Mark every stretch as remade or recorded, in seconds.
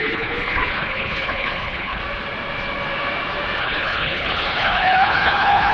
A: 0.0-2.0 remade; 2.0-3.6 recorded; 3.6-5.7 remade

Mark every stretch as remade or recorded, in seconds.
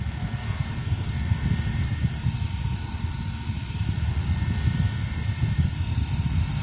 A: 0.0-6.6 recorded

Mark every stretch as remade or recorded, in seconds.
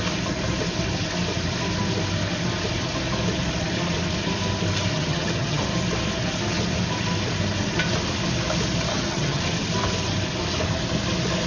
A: 0.0-4.9 recorded; 4.9-5.6 remade; 5.6-8.9 recorded; 8.9-9.4 remade; 9.4-11.5 recorded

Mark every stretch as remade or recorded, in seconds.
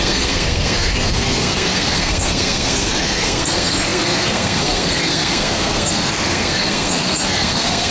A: 0.0-7.9 remade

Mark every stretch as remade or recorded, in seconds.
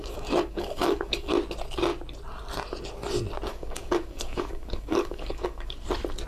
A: 0.0-1.3 remade; 1.3-3.5 recorded; 3.5-5.8 remade; 5.8-6.3 recorded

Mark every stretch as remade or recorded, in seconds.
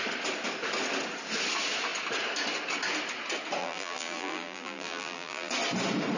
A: 0.0-3.6 recorded; 3.6-5.5 remade; 5.5-6.2 recorded